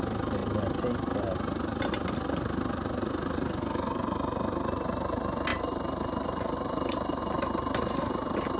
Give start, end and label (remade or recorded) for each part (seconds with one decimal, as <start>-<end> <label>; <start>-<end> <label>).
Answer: 0.0-0.4 recorded; 0.4-3.0 remade; 3.0-5.5 recorded; 5.5-7.2 remade; 7.2-8.6 recorded